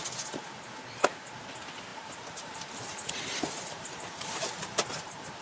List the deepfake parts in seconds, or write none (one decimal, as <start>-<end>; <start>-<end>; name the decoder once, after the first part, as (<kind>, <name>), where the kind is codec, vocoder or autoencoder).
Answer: 1.9-5.4 (vocoder, BigVGAN v2)